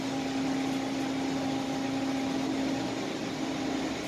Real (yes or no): yes